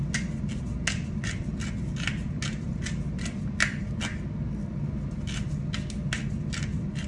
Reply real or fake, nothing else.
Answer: real